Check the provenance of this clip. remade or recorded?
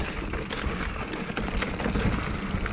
recorded